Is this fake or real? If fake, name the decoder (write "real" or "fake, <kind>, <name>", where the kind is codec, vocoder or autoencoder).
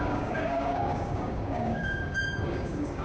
fake, codec, DAC